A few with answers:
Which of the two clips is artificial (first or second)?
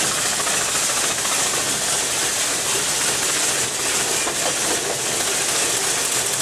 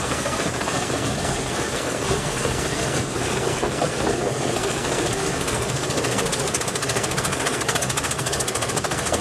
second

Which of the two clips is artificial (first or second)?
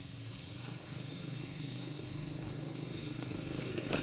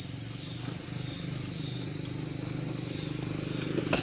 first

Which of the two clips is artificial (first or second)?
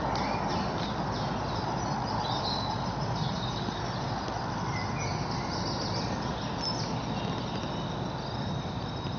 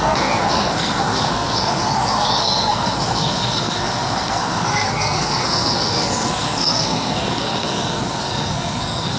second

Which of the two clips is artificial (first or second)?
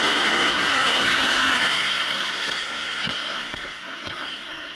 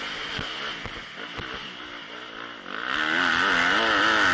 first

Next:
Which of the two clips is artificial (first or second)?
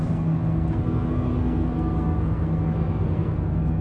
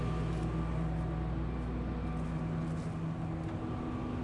first